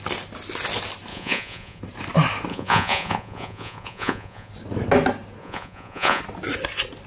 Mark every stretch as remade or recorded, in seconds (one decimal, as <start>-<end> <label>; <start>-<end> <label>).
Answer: 0.0-1.1 recorded; 1.1-1.8 remade; 1.8-2.5 recorded; 2.5-4.5 remade; 4.5-5.4 recorded; 5.4-6.2 remade; 6.2-7.1 recorded